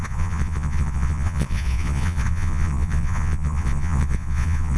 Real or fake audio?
fake